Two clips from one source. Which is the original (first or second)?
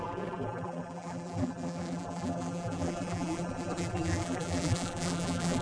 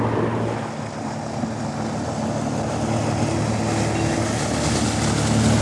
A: second